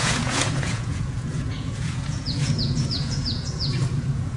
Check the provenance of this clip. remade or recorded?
remade